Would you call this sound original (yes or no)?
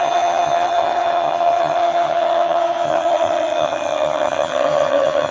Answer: no